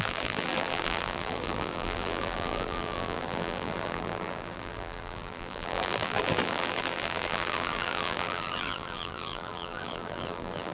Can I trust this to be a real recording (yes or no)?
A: no